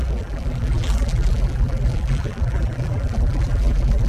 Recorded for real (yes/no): no